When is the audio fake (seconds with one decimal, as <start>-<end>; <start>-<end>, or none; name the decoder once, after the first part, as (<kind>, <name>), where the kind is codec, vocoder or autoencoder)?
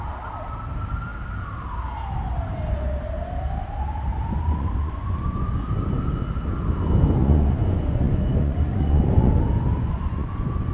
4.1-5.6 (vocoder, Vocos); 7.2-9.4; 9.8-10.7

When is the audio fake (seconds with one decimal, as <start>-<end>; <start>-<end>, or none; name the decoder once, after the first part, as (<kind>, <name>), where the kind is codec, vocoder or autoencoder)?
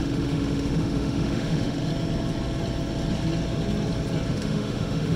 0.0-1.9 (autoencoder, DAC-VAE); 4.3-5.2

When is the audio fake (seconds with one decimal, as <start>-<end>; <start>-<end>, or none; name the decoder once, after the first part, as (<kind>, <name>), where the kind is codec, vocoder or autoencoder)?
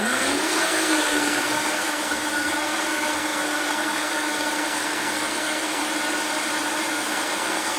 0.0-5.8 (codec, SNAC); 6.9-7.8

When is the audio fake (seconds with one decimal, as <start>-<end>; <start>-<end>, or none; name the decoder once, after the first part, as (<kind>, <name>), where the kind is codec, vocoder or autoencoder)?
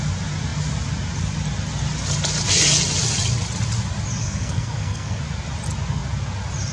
4.2-5.2 (codec, SNAC)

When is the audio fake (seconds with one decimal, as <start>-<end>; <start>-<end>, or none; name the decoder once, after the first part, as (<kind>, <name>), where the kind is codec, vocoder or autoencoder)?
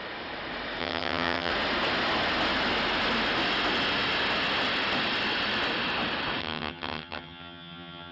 0.8-1.5 (vocoder, HiFi-GAN); 6.4-8.1